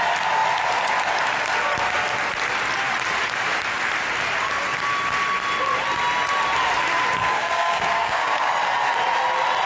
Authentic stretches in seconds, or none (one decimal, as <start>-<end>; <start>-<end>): 0.0-7.2; 8.5-9.7